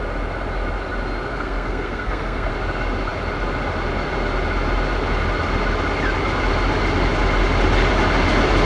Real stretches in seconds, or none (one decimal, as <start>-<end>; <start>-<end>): 0.0-1.3; 2.5-8.7